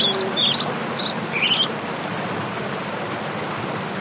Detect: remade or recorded recorded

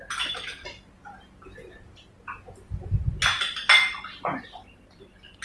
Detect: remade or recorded recorded